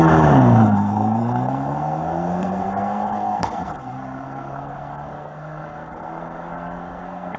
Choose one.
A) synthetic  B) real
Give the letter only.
A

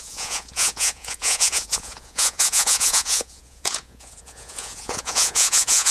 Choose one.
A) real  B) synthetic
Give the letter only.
B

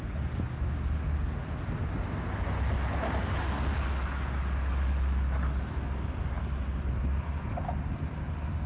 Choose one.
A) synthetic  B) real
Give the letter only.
B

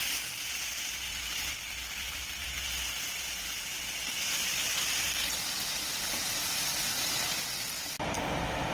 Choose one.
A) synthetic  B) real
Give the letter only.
A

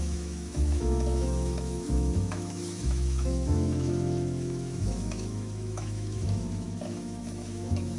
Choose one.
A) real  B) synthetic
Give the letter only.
B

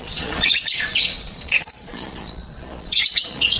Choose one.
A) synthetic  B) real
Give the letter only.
A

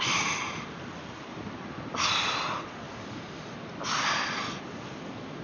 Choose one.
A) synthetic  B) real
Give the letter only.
B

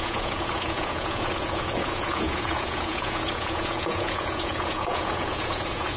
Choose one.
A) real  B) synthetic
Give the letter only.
B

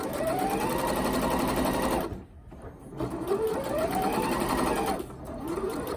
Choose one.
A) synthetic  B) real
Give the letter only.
B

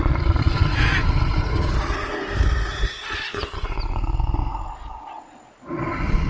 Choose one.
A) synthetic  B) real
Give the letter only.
B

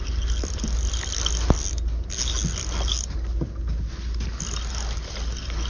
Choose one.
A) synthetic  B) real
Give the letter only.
B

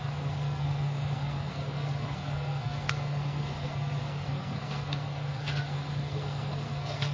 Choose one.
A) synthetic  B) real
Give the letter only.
A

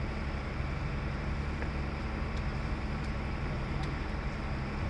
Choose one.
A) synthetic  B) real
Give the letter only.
A